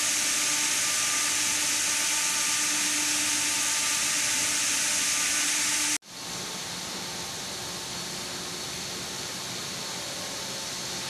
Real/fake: real